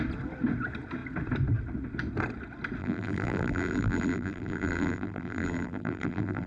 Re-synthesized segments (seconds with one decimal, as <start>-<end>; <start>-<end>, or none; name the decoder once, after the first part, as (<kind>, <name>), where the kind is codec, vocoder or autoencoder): 2.8-6.5 (vocoder, BigVGAN v2)